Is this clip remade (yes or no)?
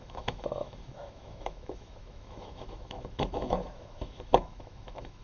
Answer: yes